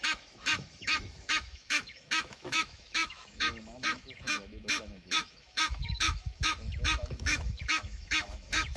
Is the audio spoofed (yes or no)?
yes